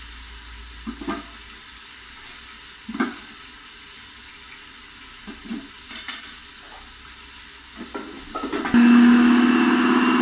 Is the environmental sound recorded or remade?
recorded